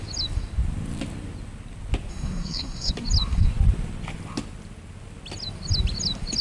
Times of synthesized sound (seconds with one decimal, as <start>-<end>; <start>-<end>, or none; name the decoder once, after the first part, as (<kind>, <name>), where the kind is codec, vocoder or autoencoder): 2.1-2.9 (codec, SNAC)